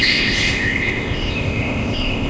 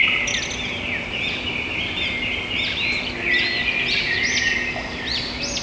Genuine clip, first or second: second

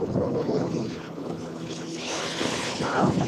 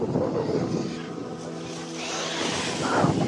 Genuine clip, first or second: second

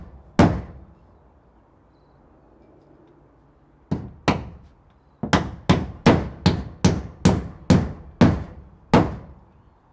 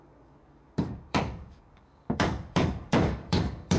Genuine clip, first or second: first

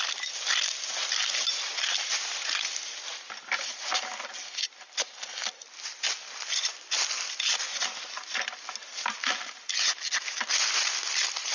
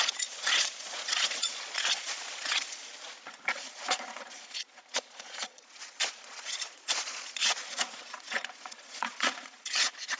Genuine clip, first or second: first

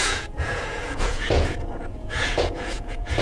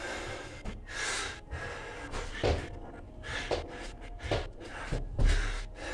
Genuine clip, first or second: second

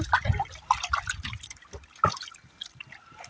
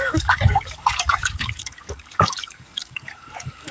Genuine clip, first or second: first